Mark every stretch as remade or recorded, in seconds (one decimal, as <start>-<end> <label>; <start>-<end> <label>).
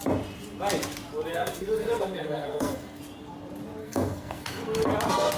0.0-1.3 recorded; 1.3-3.0 remade; 3.0-3.8 recorded; 3.8-4.9 remade; 4.9-5.4 recorded